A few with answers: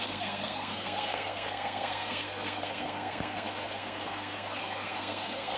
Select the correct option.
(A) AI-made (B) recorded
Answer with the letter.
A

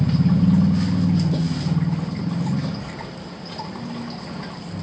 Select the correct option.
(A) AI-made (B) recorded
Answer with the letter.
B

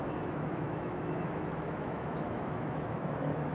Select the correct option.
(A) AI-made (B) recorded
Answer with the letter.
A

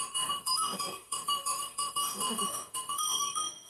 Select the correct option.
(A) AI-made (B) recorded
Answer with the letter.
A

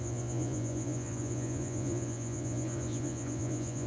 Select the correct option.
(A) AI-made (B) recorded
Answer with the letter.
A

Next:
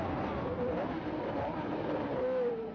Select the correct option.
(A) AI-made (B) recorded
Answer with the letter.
A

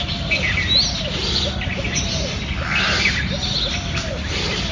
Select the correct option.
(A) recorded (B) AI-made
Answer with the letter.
A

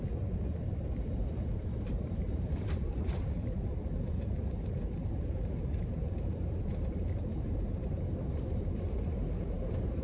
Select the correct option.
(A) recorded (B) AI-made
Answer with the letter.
B